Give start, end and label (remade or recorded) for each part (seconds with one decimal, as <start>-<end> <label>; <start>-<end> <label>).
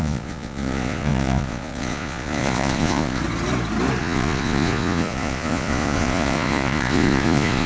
0.0-3.2 remade; 3.2-4.0 recorded; 4.0-7.7 remade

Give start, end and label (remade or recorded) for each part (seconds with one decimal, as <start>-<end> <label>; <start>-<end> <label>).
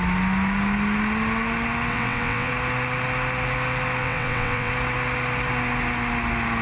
0.0-1.9 recorded; 1.9-2.5 remade; 2.5-4.0 recorded; 4.0-4.7 remade; 4.7-6.6 recorded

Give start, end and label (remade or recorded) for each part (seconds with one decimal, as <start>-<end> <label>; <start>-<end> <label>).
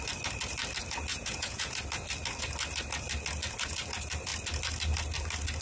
0.0-1.1 recorded; 1.1-1.7 remade; 1.7-5.6 recorded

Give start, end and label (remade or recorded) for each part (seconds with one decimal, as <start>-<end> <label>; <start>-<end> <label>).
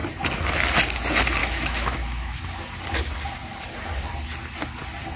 0.0-1.4 recorded; 1.4-2.4 remade; 2.4-5.2 recorded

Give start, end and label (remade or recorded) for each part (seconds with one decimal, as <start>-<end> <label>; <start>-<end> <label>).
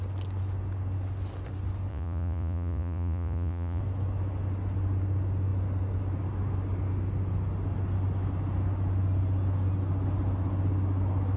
0.0-1.9 recorded; 1.9-3.8 remade; 3.8-11.4 recorded